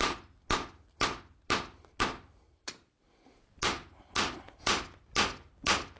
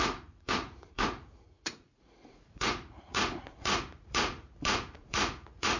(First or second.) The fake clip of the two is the second